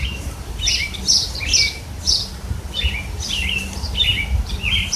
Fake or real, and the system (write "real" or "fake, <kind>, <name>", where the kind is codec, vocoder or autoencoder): fake, vocoder, BigVGAN v2